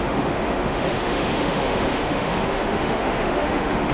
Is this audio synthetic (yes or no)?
yes